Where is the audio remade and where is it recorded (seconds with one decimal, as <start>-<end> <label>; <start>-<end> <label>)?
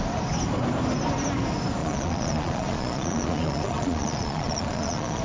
0.0-1.8 recorded; 1.8-5.2 remade